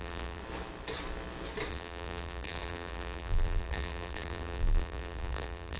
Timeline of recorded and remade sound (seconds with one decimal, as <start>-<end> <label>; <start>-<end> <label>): 0.0-0.4 remade; 0.4-1.7 recorded; 1.7-5.8 remade